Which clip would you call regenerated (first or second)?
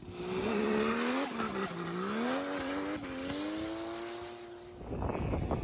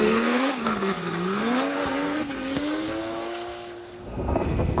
second